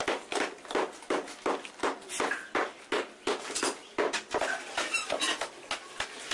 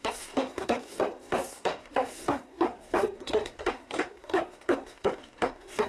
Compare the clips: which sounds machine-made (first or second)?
second